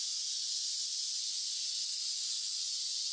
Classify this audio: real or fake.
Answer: real